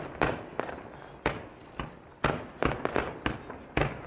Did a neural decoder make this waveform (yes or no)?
no